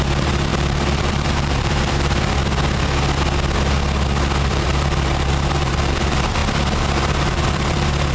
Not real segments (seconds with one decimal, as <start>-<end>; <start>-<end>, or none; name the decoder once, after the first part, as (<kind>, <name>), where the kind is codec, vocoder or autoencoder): 0.0-2.4 (vocoder, BigVGAN v2); 4.4-6.4; 6.9-8.1